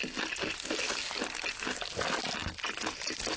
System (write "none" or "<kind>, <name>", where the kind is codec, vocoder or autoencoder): none